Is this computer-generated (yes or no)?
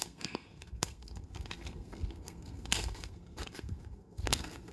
yes